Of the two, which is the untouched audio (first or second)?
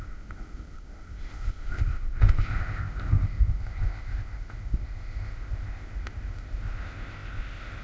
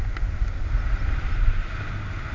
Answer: second